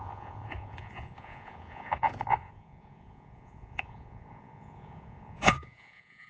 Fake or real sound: fake